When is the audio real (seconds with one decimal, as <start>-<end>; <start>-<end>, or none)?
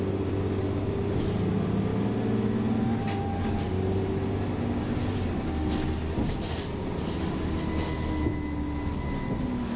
0.0-9.8